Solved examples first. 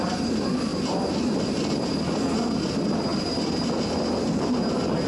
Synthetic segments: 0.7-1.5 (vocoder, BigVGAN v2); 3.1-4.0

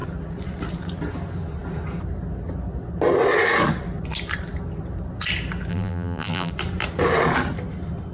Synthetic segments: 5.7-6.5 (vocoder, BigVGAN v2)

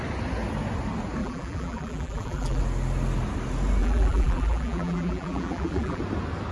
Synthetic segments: 1.2-2.6 (vocoder, BigVGAN v2); 3.8-6.0

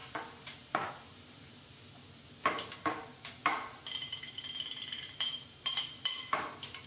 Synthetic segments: 0.0-1.5 (vocoder, BigVGAN v2); 2.5-6.9